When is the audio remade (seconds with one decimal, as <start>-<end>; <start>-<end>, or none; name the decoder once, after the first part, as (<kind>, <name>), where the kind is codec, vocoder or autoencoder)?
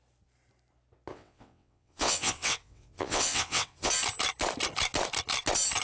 1.1-3.9 (vocoder, WaveNeXt)